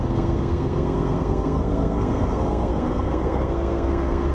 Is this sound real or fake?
fake